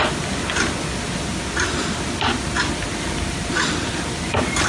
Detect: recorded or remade recorded